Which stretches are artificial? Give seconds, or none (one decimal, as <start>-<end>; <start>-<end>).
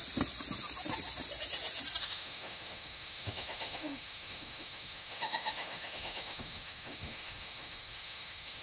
2.0-8.6